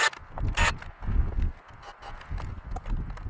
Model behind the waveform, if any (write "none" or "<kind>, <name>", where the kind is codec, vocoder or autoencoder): none